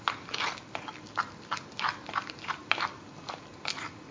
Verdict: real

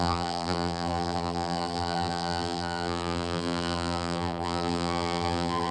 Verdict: fake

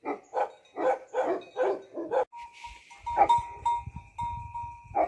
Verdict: real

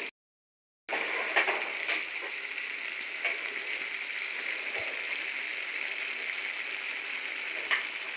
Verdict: real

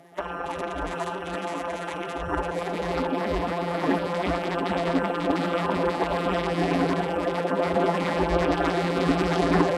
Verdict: fake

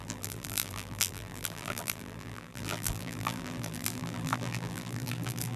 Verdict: fake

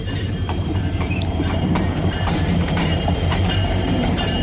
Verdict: fake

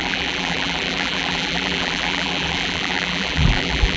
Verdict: fake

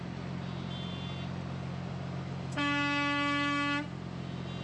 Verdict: real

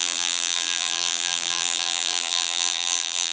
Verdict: fake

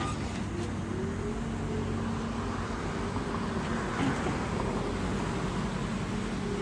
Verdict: real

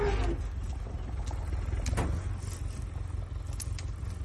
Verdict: real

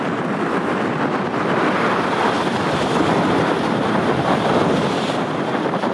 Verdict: fake